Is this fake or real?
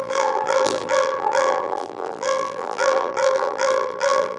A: fake